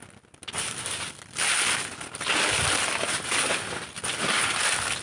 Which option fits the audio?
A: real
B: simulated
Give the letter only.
A